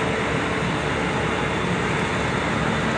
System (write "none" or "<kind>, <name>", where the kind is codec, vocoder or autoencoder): none